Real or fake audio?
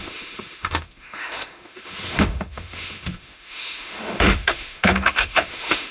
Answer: fake